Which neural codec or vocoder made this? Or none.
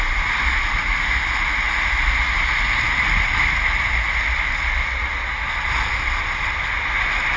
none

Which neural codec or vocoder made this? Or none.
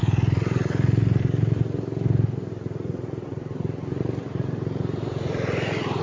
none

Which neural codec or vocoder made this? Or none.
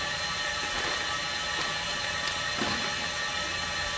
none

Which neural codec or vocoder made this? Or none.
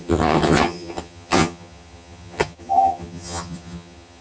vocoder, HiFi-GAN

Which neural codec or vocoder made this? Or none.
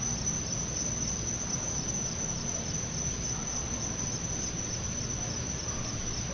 none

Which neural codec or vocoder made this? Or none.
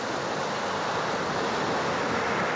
none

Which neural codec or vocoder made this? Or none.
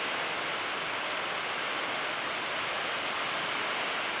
none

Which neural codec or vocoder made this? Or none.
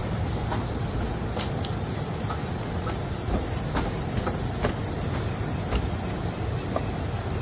none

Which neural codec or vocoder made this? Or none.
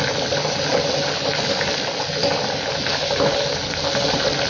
none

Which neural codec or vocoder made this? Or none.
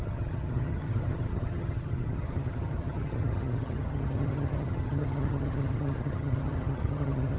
vocoder, HiFi-GAN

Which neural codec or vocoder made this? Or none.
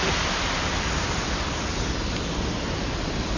none